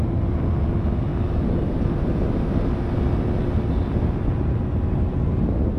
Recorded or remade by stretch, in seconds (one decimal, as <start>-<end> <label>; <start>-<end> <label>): 0.0-5.8 recorded